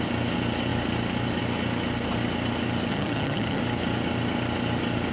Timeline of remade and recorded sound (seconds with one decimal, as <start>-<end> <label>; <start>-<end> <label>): 0.0-2.9 recorded; 2.9-3.6 remade; 3.6-5.1 recorded